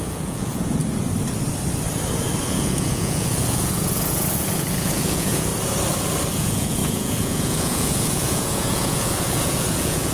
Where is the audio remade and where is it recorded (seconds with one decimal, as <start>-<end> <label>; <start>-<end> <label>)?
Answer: 0.0-0.8 remade; 0.8-2.4 recorded; 2.4-5.5 remade; 5.5-6.3 recorded; 6.3-10.1 remade